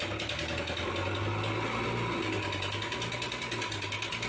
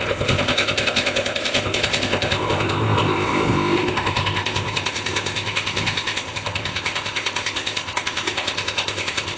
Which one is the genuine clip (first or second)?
first